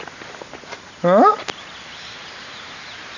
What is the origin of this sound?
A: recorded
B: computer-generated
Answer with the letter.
A